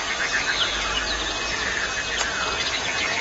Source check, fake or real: real